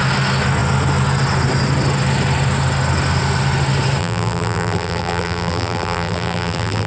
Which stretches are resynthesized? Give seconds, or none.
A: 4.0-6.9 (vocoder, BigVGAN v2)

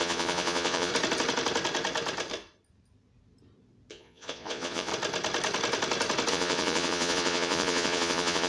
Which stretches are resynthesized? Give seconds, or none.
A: 0.0-0.9 (vocoder, Vocos); 3.9-4.9; 6.3-8.5

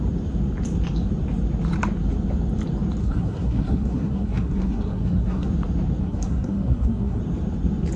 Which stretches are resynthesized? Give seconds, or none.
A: 3.0-5.5 (codec, SNAC); 6.0-7.2

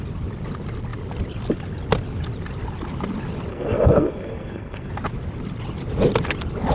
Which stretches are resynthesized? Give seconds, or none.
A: 3.5-4.9 (codec, SNAC)

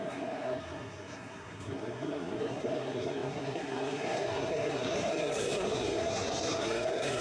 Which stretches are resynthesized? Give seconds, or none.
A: 0.0-7.2 (codec, SNAC)

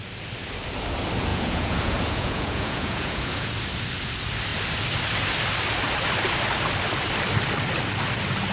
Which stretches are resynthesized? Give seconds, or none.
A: 1.3-3.5 (vocoder, Vocos)

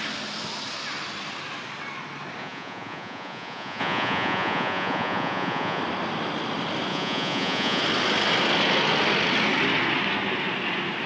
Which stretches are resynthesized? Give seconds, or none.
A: 2.4-5.8 (vocoder, Vocos); 6.9-7.8

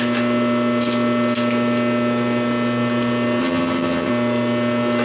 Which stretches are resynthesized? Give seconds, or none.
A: 3.4-4.1 (vocoder, HiFi-GAN)